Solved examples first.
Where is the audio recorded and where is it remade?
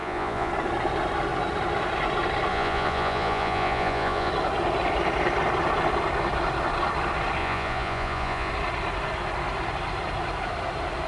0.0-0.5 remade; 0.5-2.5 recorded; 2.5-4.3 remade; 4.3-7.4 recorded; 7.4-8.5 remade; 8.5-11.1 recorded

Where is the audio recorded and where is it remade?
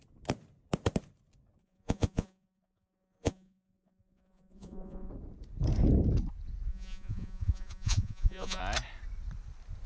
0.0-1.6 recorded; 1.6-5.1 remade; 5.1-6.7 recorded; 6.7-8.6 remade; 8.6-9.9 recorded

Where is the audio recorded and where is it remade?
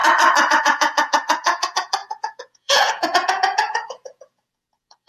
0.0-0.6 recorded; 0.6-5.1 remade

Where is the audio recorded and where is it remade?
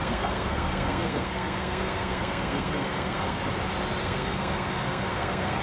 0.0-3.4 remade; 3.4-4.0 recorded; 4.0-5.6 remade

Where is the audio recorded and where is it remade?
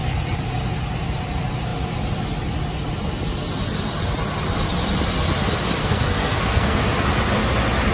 0.0-5.8 recorded; 5.8-6.8 remade; 6.8-7.9 recorded